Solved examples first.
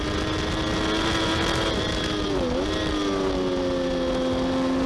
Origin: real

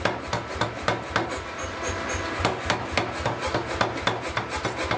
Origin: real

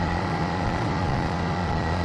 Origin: fake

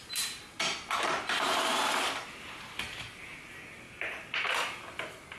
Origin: real